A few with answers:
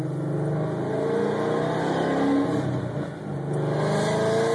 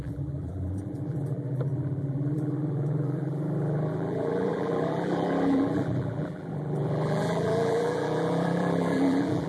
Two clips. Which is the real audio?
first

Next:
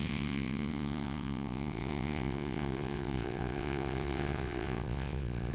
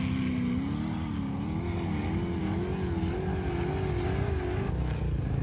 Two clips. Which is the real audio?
second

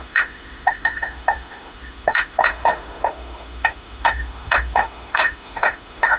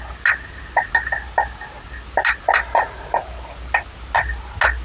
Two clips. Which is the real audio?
second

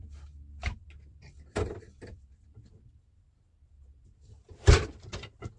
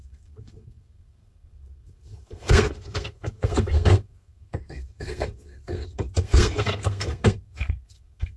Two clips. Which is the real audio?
first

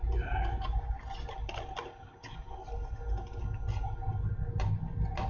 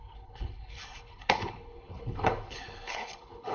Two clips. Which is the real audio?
first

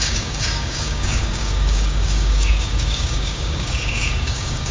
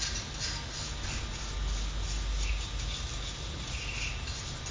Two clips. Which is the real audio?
second